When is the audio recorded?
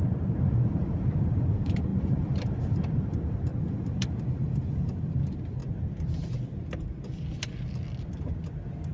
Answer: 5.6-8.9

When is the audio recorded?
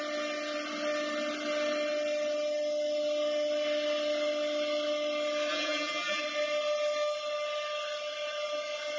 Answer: 0.0-5.5; 6.2-9.0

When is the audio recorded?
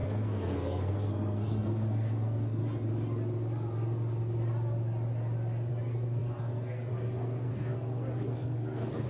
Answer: 2.6-5.7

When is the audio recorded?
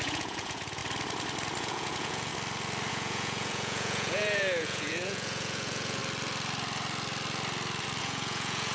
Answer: 0.8-1.6; 2.3-2.9; 6.0-8.0